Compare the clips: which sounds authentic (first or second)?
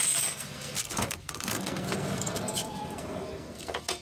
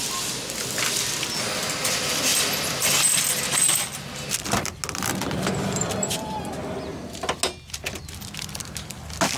second